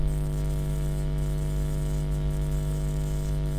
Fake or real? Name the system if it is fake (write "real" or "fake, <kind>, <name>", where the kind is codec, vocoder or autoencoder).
fake, autoencoder, DAC-VAE